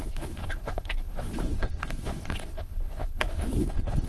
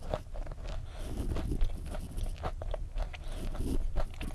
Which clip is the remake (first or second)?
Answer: first